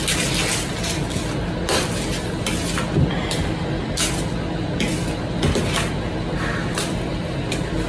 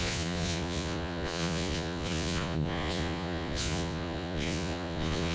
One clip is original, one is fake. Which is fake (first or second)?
second